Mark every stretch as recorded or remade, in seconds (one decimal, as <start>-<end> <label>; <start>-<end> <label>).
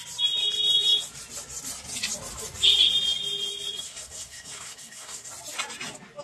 0.0-3.9 recorded; 3.9-5.3 remade; 5.3-6.2 recorded